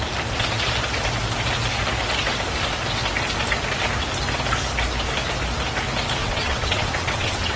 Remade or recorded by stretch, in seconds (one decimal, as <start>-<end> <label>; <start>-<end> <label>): 0.0-6.2 recorded; 6.2-7.6 remade